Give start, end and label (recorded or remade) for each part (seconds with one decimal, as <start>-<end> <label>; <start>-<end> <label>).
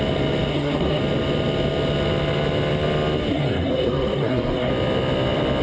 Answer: 0.0-0.5 recorded; 0.5-1.0 remade; 1.0-3.3 recorded; 3.3-4.7 remade; 4.7-5.6 recorded